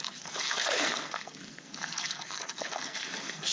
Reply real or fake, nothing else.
fake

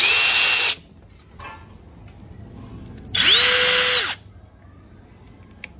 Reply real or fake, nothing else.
real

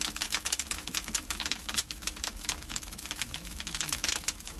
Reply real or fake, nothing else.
fake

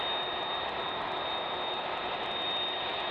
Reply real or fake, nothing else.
real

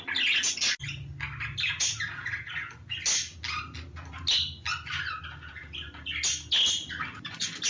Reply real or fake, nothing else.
real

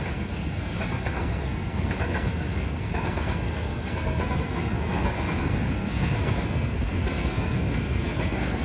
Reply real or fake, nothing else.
fake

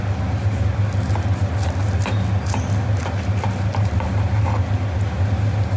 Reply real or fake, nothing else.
real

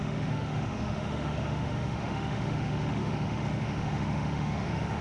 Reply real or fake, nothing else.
fake